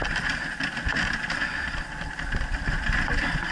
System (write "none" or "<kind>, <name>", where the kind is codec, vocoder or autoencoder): none